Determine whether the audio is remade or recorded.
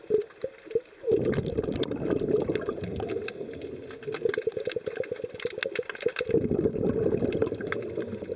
remade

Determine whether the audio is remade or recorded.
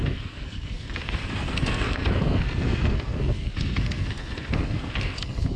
remade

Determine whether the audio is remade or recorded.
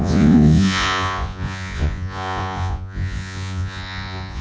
remade